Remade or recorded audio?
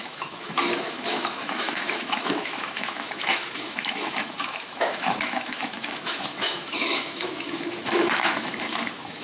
remade